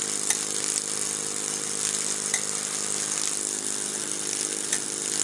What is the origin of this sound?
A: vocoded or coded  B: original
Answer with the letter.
B